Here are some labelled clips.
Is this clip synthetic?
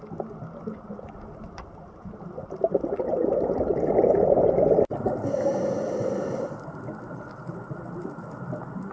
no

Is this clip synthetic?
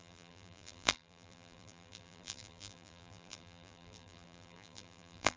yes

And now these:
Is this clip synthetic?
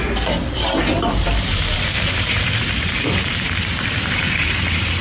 yes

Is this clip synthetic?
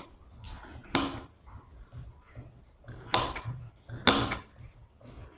no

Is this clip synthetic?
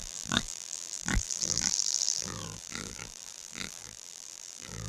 yes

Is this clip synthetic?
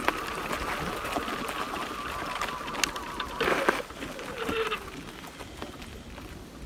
no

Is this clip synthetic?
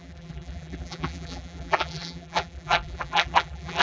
yes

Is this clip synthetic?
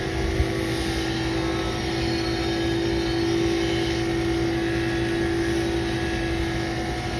no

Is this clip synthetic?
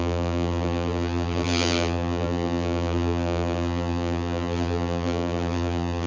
yes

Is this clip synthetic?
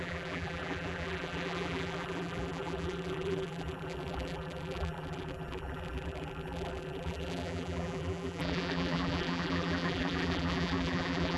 yes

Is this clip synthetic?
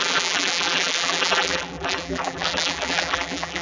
yes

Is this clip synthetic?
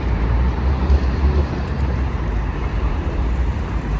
yes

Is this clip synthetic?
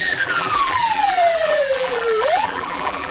yes